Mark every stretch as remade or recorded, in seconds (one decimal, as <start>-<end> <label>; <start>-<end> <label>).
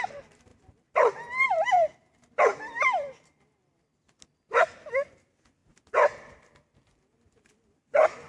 0.0-8.3 recorded